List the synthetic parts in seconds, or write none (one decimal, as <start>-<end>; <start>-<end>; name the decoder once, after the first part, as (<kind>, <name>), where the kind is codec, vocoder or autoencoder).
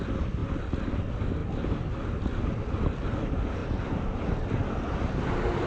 none